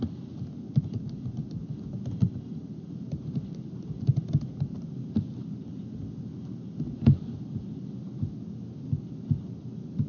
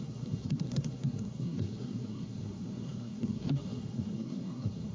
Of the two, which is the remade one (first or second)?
second